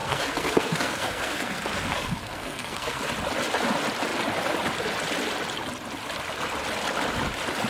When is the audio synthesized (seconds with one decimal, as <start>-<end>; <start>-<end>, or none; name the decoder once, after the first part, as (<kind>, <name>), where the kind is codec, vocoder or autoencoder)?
0.0-3.1 (codec, SNAC)